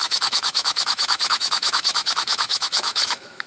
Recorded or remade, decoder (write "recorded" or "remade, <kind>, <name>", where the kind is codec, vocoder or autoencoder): remade, autoencoder, DAC-VAE